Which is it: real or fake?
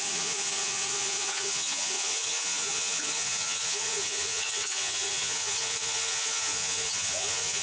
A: fake